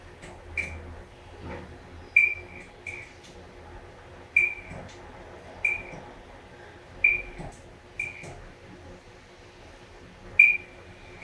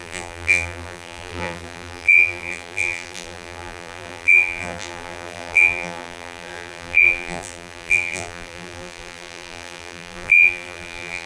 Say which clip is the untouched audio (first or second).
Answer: first